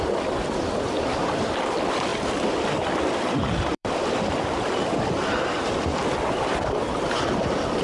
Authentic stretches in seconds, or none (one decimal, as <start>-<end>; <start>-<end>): 0.0-2.1; 5.1-7.8